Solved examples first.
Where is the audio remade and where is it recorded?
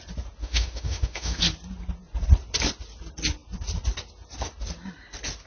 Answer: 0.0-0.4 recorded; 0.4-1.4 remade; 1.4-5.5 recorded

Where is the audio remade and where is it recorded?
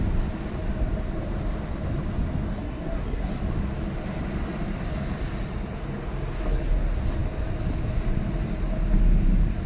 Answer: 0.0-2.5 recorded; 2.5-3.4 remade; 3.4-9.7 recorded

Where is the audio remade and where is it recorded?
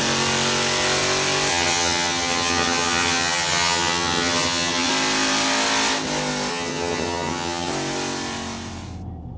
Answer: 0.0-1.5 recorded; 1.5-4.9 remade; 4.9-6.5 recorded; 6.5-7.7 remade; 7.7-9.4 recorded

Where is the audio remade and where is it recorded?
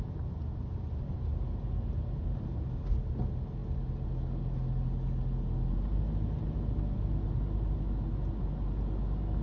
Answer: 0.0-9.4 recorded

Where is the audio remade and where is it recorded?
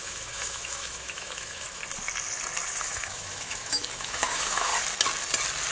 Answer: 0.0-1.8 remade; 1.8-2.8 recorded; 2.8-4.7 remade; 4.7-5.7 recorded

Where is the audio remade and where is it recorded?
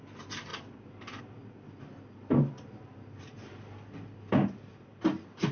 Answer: 0.0-5.5 recorded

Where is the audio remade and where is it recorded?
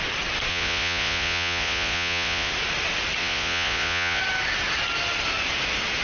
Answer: 0.0-0.5 recorded; 0.5-2.5 remade; 2.5-3.2 recorded; 3.2-4.2 remade; 4.2-6.0 recorded